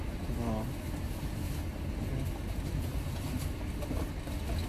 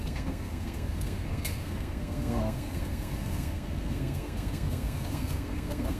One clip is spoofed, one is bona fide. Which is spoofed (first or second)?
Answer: second